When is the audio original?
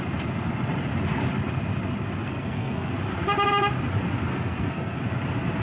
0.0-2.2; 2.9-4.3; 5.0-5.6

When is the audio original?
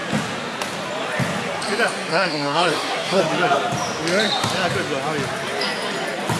0.0-2.1; 3.2-6.4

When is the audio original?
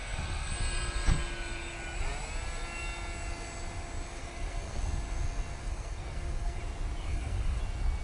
0.5-4.1; 4.8-5.6; 6.6-7.0; 7.6-8.0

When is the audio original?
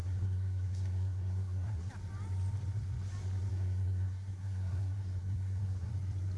1.9-3.5; 5.9-6.4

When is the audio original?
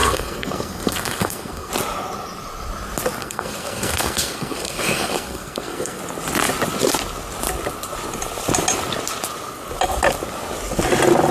1.7-3.2; 6.0-11.3